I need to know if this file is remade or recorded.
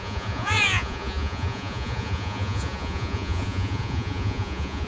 remade